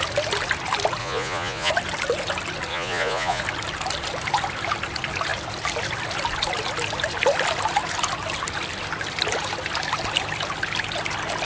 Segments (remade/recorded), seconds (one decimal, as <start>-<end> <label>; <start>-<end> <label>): 0.0-1.0 recorded; 1.0-1.7 remade; 1.7-2.7 recorded; 2.7-3.4 remade; 3.4-11.4 recorded